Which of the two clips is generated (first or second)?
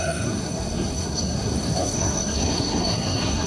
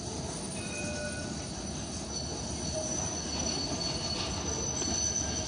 first